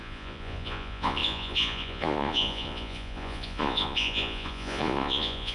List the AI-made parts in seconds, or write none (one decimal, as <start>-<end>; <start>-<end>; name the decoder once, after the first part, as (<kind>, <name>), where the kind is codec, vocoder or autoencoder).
0.0-5.5 (vocoder, Vocos)